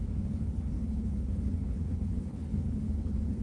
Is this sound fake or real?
fake